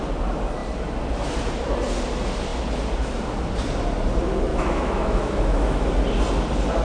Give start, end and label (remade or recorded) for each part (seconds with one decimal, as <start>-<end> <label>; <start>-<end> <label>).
0.0-4.5 recorded; 4.5-5.9 remade; 5.9-6.8 recorded